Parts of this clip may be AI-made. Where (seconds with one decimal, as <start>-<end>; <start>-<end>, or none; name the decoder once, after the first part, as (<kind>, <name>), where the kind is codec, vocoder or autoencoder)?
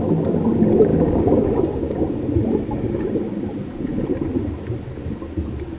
0.9-2.1 (codec, DAC)